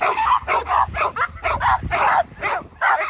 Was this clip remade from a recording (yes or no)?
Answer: no